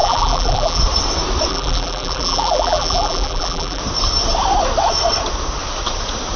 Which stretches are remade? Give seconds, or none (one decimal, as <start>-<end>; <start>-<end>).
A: 0.0-0.8; 1.5-3.8